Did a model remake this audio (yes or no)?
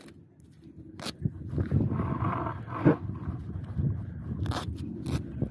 no